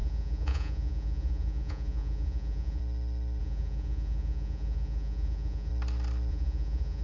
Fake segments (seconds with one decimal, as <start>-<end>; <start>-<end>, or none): 0.0-2.8; 3.4-5.7; 6.3-7.0